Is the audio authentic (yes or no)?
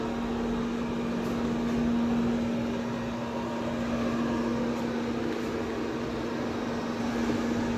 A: yes